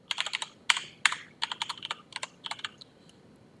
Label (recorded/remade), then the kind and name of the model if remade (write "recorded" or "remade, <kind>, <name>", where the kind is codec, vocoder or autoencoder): recorded